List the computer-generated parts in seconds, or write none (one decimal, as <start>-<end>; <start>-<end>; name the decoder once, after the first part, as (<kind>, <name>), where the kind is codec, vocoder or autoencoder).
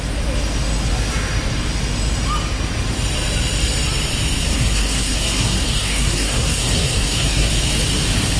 4.4-7.5 (codec, SNAC)